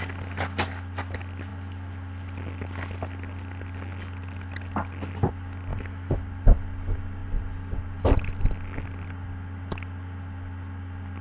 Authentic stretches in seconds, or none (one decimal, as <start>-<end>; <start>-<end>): 0.0-5.7; 6.2-11.2

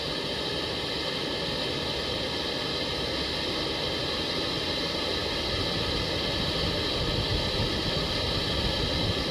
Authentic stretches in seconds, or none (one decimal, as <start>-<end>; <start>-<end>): 0.0-9.3

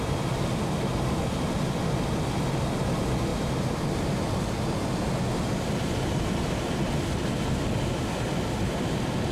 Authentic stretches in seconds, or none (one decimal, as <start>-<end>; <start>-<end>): 0.0-9.3